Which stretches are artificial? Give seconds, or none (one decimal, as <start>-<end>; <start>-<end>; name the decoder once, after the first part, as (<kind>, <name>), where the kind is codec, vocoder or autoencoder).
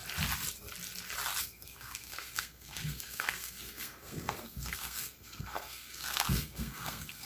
1.4-7.2 (codec, SNAC)